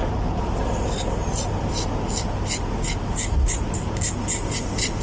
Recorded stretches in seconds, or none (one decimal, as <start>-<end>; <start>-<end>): 0.0-5.0